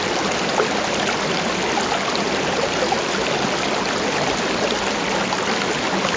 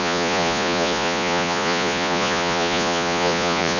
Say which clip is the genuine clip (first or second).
first